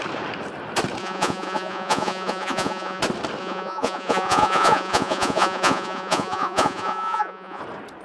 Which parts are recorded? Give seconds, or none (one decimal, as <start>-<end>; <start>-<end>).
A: 0.0-1.0; 3.0-3.4; 7.6-8.0